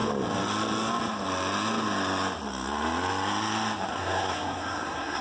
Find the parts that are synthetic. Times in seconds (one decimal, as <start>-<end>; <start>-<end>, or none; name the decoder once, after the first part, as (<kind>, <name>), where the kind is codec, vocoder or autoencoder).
3.9-5.2 (codec, SNAC)